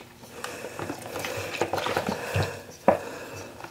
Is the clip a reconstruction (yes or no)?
no